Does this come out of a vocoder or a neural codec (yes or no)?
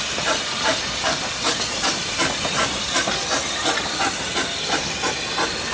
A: no